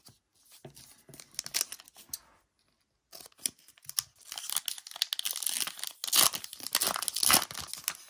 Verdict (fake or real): real